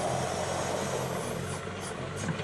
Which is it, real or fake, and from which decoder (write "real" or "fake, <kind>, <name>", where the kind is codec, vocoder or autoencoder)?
real